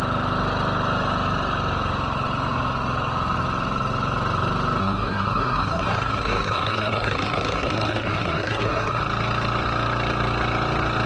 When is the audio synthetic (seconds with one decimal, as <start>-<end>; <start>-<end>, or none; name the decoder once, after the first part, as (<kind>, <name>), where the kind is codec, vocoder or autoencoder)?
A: 4.8-9.0 (codec, SNAC)